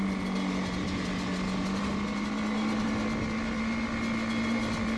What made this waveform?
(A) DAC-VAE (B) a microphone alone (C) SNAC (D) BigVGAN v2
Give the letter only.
B